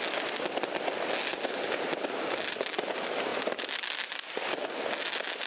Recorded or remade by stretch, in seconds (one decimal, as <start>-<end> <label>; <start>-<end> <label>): 0.0-5.5 recorded

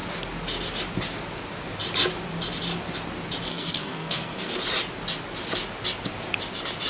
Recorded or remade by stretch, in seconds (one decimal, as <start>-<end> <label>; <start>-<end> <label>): 0.0-3.5 recorded; 3.5-4.6 remade; 4.6-6.9 recorded

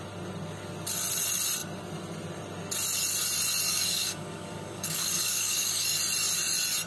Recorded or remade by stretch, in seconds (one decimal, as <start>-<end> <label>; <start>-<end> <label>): 0.0-3.7 recorded; 3.7-6.0 remade; 6.0-6.9 recorded

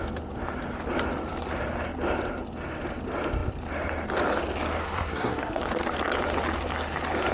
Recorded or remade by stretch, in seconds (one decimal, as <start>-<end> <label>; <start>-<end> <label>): 0.0-4.8 recorded; 4.8-5.6 remade; 5.6-7.3 recorded